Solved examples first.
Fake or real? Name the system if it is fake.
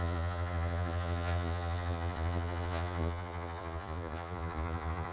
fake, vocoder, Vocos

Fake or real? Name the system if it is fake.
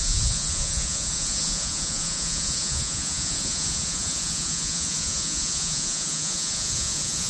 fake, vocoder, Vocos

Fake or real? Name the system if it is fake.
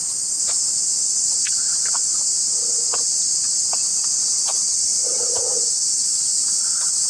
real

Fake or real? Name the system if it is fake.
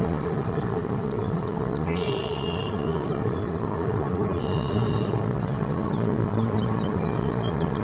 fake, vocoder, Vocos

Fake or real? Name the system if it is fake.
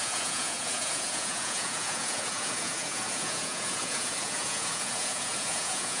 fake, vocoder, Vocos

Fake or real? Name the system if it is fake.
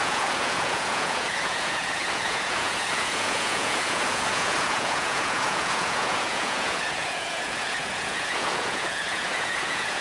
fake, vocoder, Vocos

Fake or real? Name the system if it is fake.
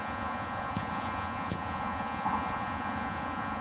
fake, vocoder, Vocos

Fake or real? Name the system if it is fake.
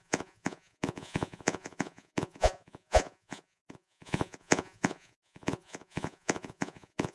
fake, vocoder, Vocos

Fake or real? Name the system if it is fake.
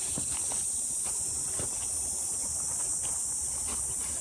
real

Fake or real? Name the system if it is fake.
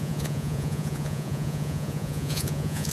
fake, vocoder, Vocos